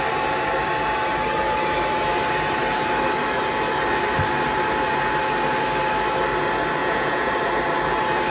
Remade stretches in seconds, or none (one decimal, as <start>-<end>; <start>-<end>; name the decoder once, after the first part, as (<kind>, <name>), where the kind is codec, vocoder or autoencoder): 6.8-7.3 (vocoder, Vocos)